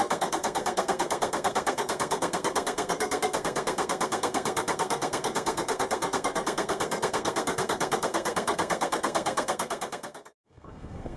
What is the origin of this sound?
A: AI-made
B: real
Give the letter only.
A